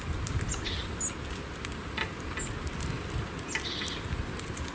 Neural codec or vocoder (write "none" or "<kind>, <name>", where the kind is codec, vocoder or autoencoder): none